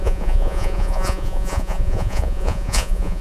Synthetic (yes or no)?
yes